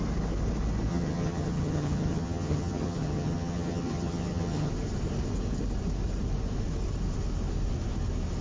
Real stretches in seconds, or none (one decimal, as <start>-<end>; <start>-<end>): 0.0-0.9; 4.7-8.4

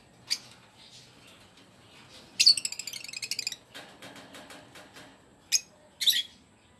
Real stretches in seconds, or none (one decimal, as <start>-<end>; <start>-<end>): 0.0-6.8